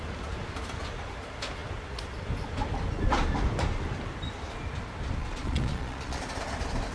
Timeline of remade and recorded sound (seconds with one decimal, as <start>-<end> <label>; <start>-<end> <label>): 0.0-5.2 recorded; 5.2-6.2 remade; 6.2-6.9 recorded